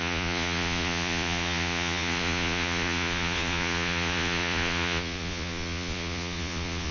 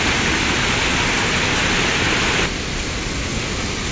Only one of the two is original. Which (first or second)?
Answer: second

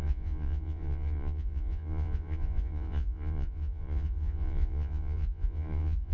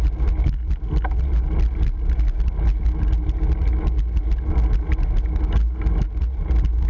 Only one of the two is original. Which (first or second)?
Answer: second